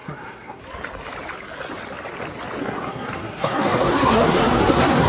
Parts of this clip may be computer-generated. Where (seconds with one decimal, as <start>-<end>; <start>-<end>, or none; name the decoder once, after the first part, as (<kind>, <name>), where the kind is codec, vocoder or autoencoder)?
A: 0.0-0.6 (codec, SNAC); 2.6-5.1